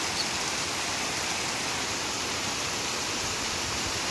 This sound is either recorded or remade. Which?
recorded